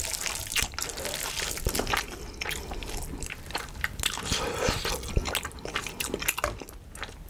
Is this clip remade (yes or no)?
no